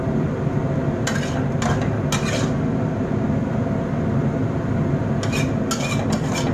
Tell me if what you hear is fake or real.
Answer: real